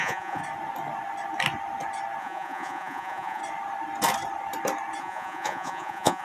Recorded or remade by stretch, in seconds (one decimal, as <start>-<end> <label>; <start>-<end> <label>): 0.0-0.4 remade; 0.4-2.2 recorded; 2.2-3.4 remade; 3.4-5.0 recorded; 5.0-6.2 remade